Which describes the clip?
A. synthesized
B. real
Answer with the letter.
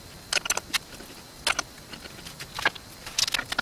B